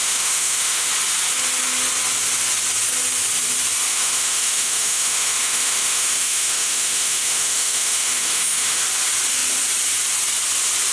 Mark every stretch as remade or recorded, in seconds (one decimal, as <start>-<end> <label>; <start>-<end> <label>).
0.0-0.9 remade; 0.9-3.9 recorded; 3.9-8.8 remade; 8.8-10.9 recorded